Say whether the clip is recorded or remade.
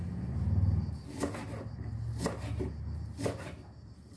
recorded